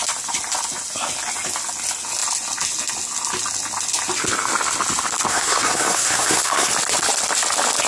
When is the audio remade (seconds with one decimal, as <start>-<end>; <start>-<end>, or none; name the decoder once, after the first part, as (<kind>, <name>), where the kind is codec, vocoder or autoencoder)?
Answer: 5.3-6.7 (codec, SNAC)